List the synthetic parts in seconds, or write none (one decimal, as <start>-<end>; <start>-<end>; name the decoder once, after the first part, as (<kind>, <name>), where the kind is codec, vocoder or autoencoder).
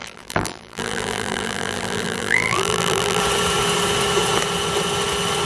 0.0-3.2 (vocoder, BigVGAN v2)